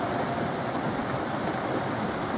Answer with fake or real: real